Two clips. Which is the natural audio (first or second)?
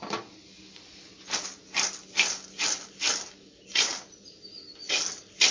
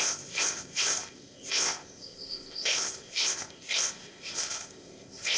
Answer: first